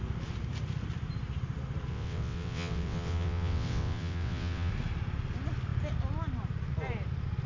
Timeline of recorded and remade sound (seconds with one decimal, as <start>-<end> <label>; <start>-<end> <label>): 0.0-1.9 recorded; 1.9-4.7 remade; 4.7-7.5 recorded